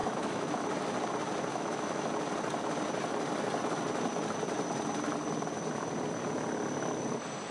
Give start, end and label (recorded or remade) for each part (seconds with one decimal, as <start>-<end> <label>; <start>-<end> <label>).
0.0-0.5 remade; 0.5-1.5 recorded; 1.5-2.1 remade; 2.1-7.5 recorded